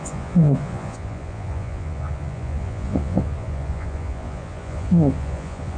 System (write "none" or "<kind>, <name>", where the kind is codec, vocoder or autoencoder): vocoder, Vocos